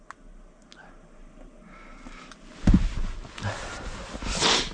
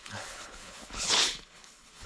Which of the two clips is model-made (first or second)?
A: second